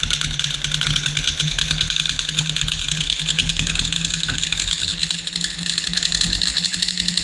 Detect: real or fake fake